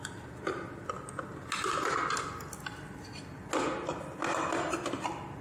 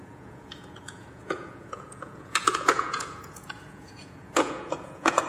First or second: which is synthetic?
second